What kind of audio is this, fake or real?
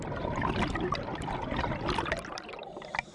real